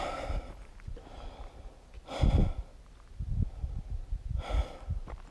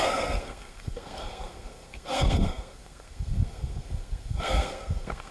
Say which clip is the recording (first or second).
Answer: first